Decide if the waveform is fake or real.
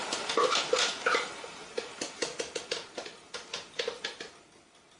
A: real